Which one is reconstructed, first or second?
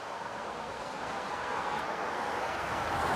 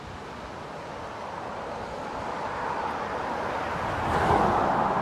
first